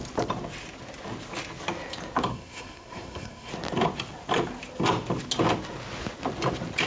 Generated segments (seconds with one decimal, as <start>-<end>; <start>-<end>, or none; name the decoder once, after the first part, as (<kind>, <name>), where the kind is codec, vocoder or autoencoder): 2.3-3.5 (codec, SNAC)